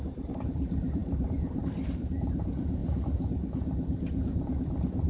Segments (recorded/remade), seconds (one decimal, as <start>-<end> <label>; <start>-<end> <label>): 0.0-2.8 remade; 2.8-5.1 recorded